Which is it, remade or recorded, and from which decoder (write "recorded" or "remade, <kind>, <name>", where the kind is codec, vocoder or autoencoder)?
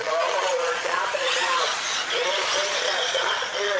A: remade, vocoder, Vocos